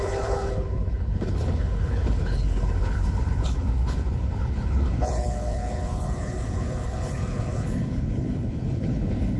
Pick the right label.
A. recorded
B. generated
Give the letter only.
B